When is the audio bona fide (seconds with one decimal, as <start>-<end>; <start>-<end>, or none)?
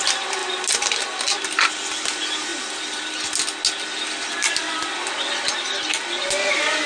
0.0-6.9